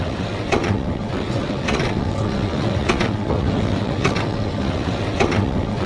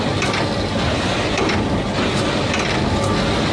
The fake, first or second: first